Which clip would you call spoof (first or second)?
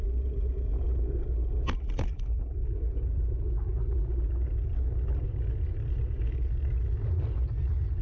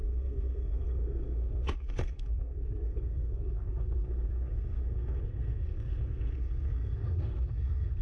second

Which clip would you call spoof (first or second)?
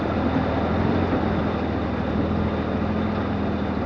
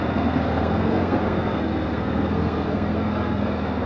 second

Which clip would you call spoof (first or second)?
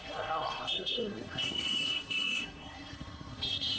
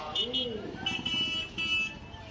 first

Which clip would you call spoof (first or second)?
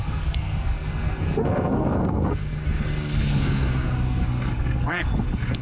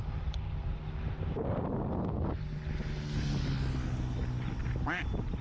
first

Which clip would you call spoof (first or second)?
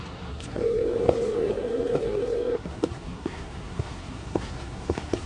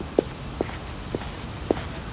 first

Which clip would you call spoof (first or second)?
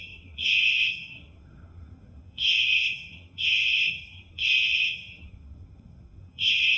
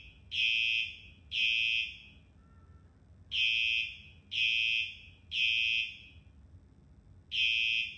first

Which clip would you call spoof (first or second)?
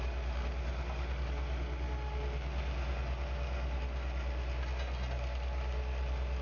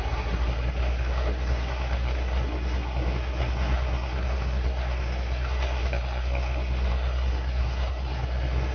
second